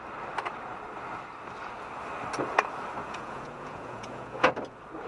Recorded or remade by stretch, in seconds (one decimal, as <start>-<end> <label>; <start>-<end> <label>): 0.0-3.0 recorded; 3.0-4.5 remade; 4.5-5.1 recorded